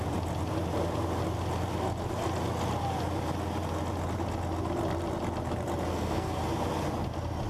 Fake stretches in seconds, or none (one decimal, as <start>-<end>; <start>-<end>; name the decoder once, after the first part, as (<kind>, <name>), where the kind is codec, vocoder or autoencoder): 5.9-6.4 (codec, SNAC)